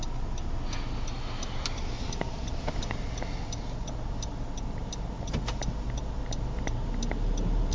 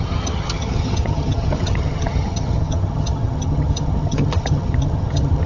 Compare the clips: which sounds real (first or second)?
first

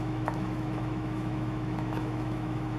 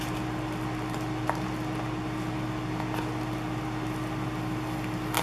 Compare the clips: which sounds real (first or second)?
second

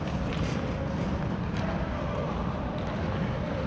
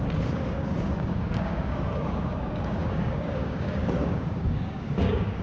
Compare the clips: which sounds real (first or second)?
first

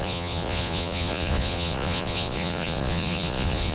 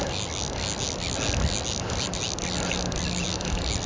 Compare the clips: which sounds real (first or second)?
second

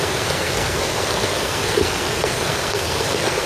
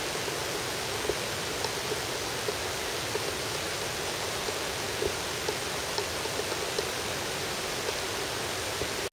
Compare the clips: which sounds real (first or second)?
second